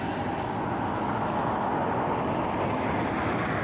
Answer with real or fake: real